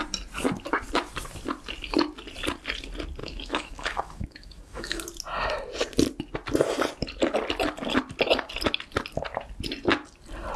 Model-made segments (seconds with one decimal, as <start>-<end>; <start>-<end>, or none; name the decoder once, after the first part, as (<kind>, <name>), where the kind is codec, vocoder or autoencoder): 3.2-5.0 (autoencoder, DAC-VAE)